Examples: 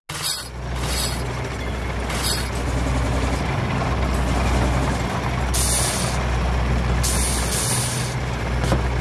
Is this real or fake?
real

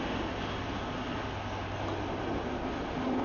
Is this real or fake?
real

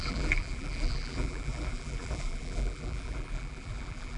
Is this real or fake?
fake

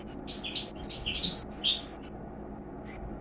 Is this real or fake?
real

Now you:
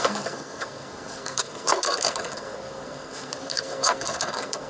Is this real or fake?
fake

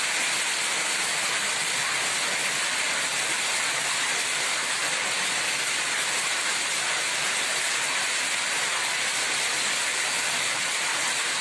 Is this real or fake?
real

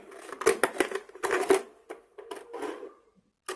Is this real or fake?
real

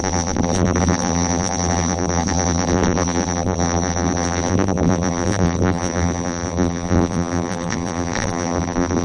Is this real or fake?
fake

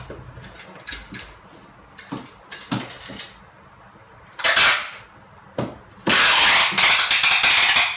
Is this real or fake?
real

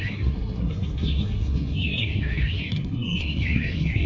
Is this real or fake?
fake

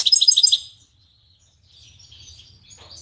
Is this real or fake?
real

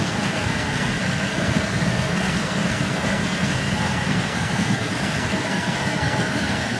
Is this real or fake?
fake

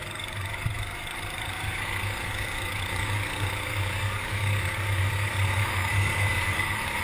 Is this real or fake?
fake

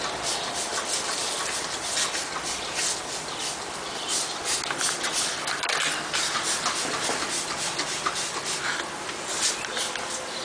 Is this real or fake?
real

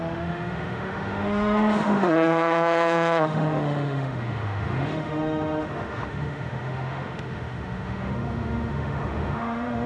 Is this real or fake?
fake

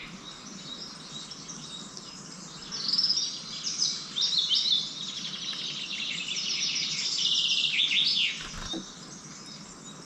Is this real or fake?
real